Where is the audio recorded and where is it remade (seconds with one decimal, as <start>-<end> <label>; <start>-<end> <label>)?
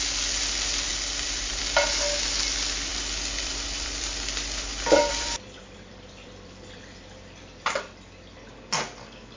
0.0-0.9 recorded; 0.9-1.6 remade; 1.6-2.9 recorded; 2.9-7.8 remade; 7.8-9.4 recorded